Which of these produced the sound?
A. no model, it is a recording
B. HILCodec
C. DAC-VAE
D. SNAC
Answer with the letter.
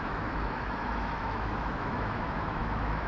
C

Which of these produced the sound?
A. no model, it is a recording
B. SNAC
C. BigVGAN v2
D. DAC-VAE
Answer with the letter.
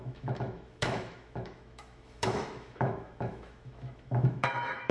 D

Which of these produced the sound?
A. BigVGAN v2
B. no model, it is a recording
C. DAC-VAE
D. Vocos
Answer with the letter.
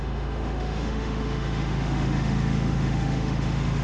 C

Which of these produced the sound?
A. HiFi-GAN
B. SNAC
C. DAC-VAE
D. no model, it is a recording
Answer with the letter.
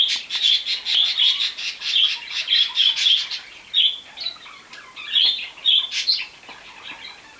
D